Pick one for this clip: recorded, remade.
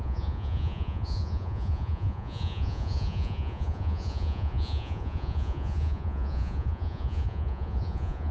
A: remade